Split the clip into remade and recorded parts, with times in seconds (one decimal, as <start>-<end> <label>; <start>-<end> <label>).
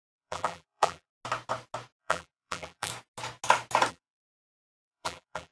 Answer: 0.0-1.1 remade; 1.1-2.0 recorded; 2.0-2.9 remade; 2.9-3.9 recorded; 3.9-5.5 remade